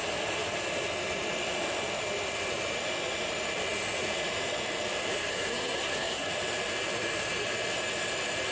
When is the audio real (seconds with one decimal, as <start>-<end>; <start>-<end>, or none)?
0.0-5.3; 6.3-8.5